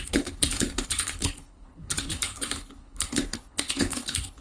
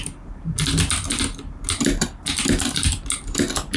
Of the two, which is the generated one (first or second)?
first